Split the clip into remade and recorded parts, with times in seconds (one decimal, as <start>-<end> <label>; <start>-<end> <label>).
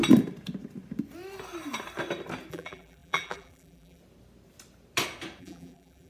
0.0-2.5 recorded; 2.5-4.0 remade; 4.0-5.4 recorded; 5.4-6.1 remade